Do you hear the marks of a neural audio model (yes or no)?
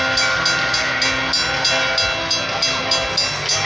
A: no